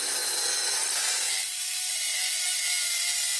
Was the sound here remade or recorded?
recorded